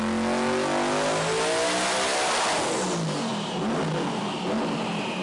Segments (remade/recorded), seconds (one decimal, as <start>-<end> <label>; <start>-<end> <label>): 0.0-5.2 recorded